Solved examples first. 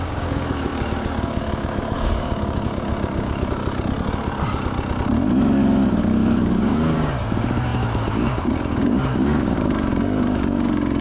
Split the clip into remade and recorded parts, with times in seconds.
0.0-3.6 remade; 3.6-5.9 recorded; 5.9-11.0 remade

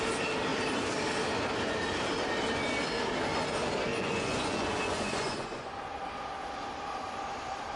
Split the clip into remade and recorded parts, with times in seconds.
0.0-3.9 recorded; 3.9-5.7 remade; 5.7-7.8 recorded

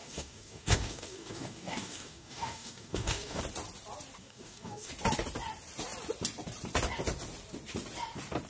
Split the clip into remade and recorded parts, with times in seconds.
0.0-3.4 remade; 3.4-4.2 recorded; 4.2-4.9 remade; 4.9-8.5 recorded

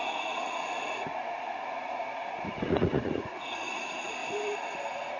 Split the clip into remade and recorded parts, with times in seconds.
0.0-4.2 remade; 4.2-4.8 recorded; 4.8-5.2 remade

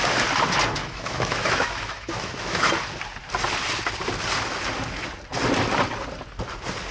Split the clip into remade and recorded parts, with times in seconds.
0.0-0.8 recorded; 0.8-2.7 remade; 2.7-6.9 recorded

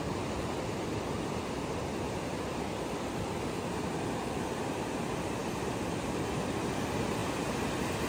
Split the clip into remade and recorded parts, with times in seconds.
0.0-8.1 recorded